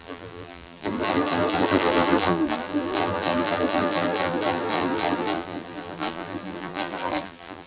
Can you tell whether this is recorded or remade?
remade